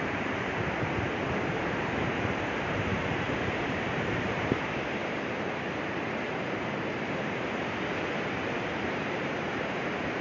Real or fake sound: fake